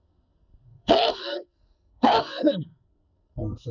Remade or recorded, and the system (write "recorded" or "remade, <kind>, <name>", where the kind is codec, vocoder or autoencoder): remade, codec, SNAC